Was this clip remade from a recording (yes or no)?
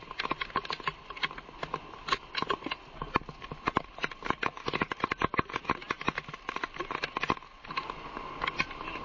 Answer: no